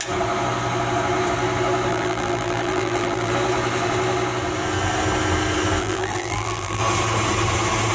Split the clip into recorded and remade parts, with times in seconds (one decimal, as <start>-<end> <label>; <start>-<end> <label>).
0.0-1.9 recorded; 1.9-3.3 remade; 3.3-5.8 recorded; 5.8-6.8 remade; 6.8-7.9 recorded